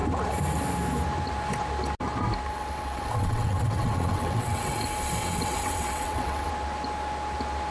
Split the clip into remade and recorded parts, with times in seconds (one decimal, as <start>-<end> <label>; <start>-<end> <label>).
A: 0.0-2.5 recorded; 2.5-4.8 remade; 4.8-5.2 recorded; 5.2-6.5 remade; 6.5-7.7 recorded